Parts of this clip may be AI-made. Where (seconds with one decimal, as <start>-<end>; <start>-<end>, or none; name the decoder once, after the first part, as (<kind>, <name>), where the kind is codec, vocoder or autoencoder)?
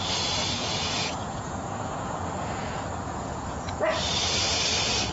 0.6-3.7 (vocoder, Vocos)